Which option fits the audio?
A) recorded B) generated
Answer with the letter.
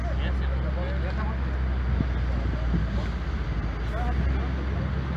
A